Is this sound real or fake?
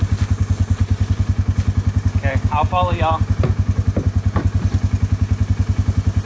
real